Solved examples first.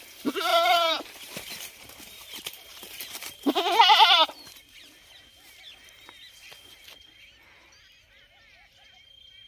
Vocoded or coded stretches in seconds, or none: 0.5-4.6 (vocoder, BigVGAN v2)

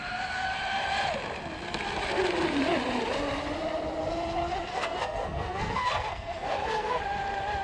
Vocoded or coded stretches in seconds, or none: 4.7-7.0 (codec, SNAC)